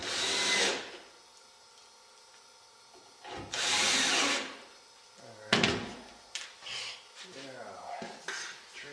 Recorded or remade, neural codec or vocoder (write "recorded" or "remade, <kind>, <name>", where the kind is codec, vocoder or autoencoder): recorded